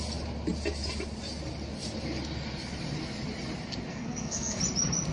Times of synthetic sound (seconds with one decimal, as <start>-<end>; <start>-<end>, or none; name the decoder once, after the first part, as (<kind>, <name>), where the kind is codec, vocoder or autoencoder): 3.9-4.6 (codec, SNAC)